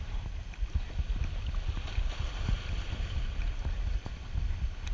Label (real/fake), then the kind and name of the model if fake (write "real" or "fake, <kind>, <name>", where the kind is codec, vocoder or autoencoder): real